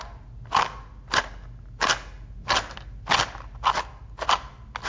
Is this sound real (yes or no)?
yes